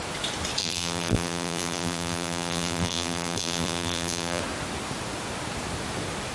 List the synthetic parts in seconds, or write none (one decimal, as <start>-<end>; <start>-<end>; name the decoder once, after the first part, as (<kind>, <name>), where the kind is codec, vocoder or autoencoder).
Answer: 0.6-4.4 (vocoder, BigVGAN v2)